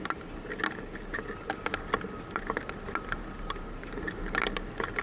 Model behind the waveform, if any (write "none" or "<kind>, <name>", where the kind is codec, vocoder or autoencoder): none